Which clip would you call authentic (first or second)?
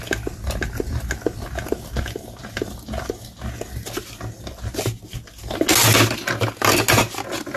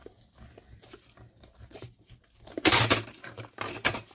first